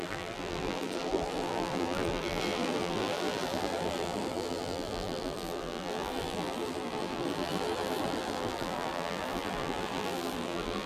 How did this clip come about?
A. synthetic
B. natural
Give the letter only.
A